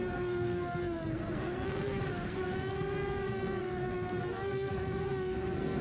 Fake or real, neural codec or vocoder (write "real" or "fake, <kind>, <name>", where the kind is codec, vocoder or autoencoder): fake, codec, SNAC